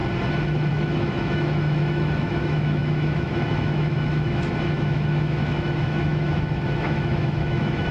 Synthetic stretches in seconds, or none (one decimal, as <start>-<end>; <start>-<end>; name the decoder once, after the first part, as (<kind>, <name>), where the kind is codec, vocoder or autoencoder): 0.7-7.9 (autoencoder, DAC-VAE)